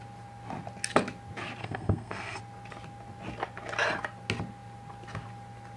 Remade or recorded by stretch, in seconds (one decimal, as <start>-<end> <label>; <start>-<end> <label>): 0.0-1.6 recorded; 1.6-2.4 remade; 2.4-5.8 recorded